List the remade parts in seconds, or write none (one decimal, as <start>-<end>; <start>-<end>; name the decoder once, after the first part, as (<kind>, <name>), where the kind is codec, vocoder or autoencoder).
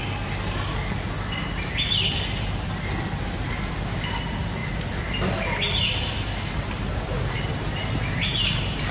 none